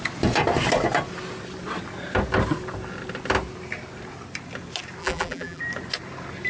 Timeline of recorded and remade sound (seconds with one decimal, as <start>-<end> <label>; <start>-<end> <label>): 0.0-5.0 recorded; 5.0-5.6 remade; 5.6-6.5 recorded